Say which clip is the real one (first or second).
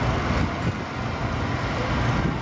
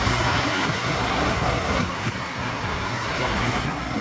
first